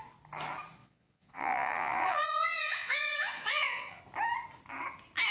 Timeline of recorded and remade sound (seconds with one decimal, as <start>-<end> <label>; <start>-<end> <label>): 0.0-0.8 recorded; 0.8-4.0 remade; 4.0-5.3 recorded